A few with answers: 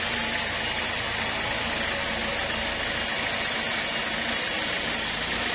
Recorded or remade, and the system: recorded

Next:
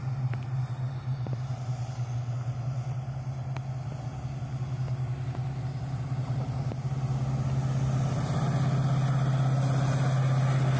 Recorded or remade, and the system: recorded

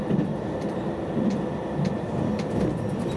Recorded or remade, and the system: remade, vocoder, BigVGAN v2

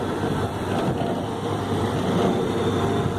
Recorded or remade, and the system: remade, vocoder, BigVGAN v2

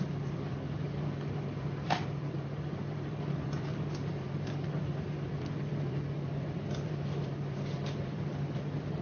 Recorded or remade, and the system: remade, vocoder, BigVGAN v2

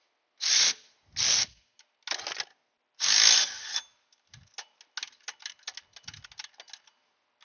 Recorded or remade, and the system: recorded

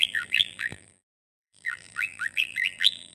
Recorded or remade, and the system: remade, vocoder, BigVGAN v2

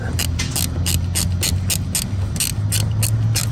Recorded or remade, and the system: recorded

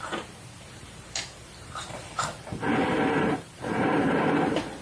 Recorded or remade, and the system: remade, vocoder, BigVGAN v2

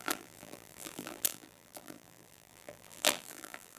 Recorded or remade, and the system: remade, vocoder, BigVGAN v2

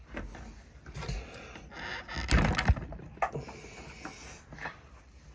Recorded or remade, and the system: recorded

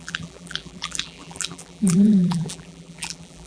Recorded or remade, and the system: remade, vocoder, BigVGAN v2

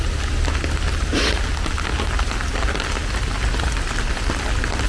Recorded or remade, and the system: recorded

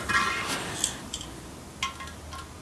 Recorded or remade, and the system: recorded